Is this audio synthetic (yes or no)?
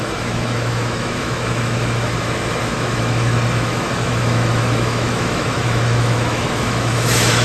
yes